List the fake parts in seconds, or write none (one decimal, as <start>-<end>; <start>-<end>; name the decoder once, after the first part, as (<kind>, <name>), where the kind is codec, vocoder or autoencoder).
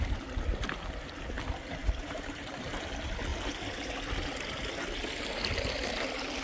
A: 1.8-2.6 (vocoder, BigVGAN v2); 3.3-3.9